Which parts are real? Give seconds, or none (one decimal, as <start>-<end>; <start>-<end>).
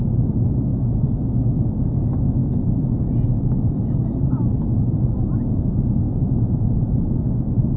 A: 0.7-2.0